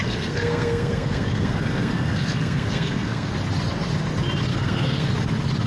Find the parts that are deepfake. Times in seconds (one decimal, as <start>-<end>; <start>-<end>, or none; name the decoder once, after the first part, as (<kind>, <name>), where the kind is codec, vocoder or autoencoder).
0.0-3.3 (codec, SNAC); 4.5-5.1